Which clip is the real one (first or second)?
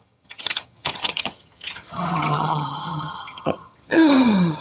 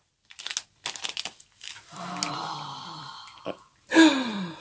second